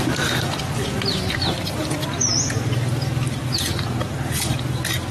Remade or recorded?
recorded